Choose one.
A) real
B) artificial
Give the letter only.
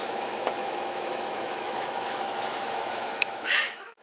B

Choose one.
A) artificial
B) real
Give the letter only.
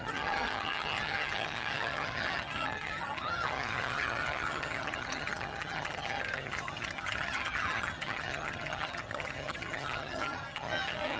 A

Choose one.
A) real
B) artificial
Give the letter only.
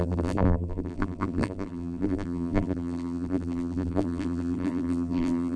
B